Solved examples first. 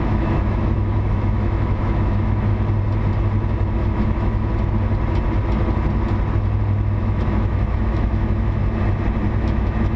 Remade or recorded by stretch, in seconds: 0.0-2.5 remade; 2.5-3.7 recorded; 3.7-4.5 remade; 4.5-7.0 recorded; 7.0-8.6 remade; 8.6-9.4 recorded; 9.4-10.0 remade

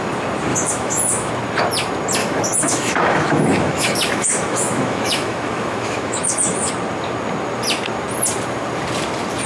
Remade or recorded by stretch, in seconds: 0.0-0.5 recorded; 0.5-1.3 remade; 1.3-2.2 recorded; 2.2-6.7 remade; 6.7-9.5 recorded

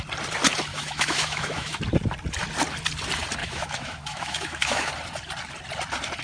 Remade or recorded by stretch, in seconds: 0.0-0.7 recorded; 0.7-1.8 remade; 1.8-3.4 recorded; 3.4-4.9 remade; 4.9-6.2 recorded

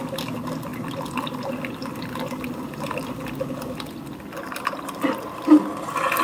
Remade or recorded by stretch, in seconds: 0.0-6.2 recorded

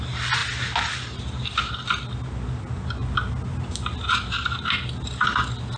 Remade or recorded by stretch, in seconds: 0.0-5.8 recorded

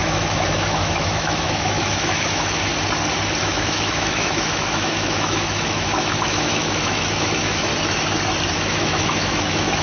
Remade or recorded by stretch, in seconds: 0.0-2.7 remade; 2.7-3.4 recorded; 3.4-7.7 remade; 7.7-8.5 recorded; 8.5-9.8 remade